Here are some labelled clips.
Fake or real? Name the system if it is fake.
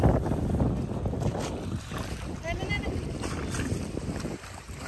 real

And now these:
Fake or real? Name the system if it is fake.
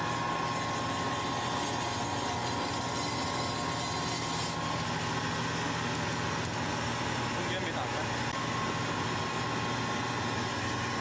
real